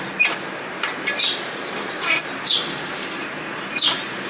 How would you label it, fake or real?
real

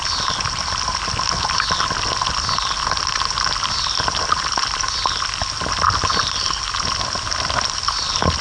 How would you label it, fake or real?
real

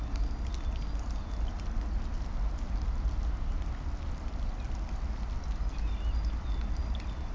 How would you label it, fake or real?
real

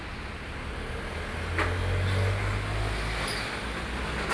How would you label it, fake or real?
real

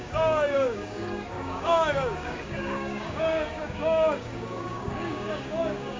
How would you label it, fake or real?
fake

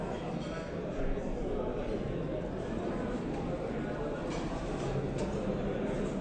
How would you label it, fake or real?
real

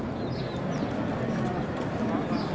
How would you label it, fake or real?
real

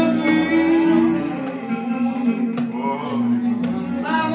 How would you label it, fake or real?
real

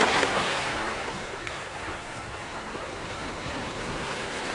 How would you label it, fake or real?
fake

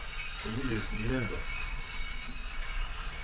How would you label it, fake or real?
fake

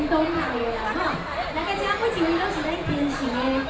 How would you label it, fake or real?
real